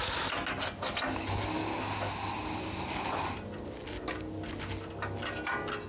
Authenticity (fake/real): real